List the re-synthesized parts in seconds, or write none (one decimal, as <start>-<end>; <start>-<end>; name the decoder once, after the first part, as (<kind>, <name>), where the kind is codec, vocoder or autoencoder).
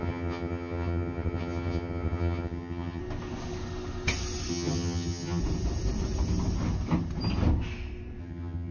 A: 0.0-3.0 (vocoder, HiFi-GAN); 4.5-5.4; 8.2-8.7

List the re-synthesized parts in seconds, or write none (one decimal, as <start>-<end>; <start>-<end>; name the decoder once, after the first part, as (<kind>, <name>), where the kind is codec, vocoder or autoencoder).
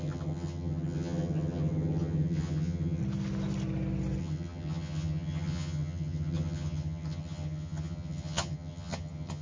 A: 0.0-3.0 (vocoder, HiFi-GAN); 4.2-9.4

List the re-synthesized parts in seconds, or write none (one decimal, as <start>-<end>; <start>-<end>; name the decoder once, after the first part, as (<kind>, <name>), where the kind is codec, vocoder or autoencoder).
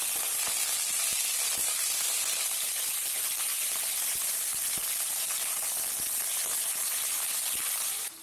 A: none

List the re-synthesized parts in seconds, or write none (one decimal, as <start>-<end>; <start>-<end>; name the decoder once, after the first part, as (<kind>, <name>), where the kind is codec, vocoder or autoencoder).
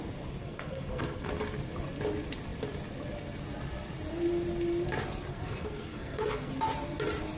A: 0.4-1.3 (codec, SNAC); 5.3-6.5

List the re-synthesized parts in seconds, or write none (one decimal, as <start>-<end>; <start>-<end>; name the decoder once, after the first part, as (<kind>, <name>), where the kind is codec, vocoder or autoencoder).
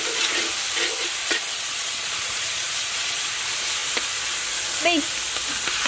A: 1.2-3.3 (vocoder, Vocos)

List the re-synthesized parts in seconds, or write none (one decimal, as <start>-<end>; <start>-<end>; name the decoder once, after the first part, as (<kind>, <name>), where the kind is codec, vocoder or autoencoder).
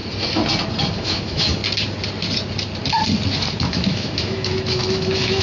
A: 0.9-1.6 (autoencoder, DAC-VAE); 3.7-5.4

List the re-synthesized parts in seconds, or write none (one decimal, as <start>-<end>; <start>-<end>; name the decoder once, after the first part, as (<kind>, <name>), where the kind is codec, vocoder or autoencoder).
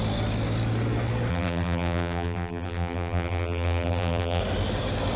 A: 1.3-4.4 (vocoder, BigVGAN v2)